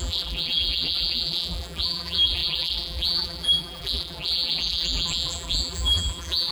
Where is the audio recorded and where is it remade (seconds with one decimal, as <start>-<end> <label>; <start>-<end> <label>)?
0.0-6.5 remade